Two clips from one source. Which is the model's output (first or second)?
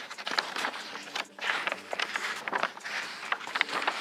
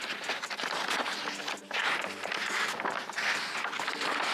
first